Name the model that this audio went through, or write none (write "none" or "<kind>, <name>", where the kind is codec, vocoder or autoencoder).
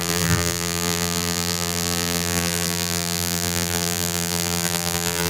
vocoder, BigVGAN v2